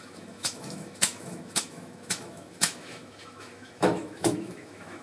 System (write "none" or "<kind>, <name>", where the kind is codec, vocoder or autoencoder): autoencoder, DAC-VAE